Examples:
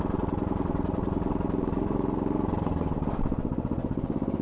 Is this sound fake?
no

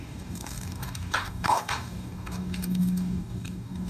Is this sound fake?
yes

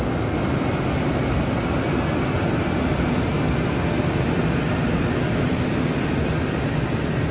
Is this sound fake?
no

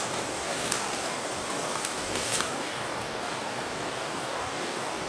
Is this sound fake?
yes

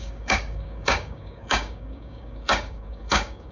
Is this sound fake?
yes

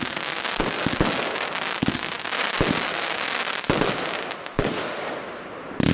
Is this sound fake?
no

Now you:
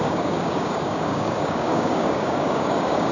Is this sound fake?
yes